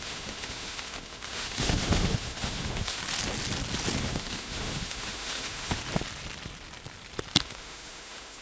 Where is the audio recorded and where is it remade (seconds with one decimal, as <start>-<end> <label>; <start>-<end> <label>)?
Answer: 0.0-3.0 remade; 3.0-4.0 recorded; 4.0-5.8 remade; 5.8-7.4 recorded; 7.4-8.4 remade